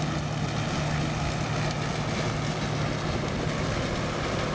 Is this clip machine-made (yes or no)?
no